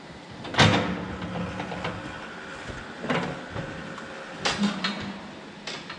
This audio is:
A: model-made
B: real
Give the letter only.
B